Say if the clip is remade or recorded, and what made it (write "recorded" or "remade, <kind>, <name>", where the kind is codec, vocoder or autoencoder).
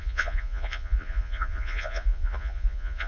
remade, vocoder, Vocos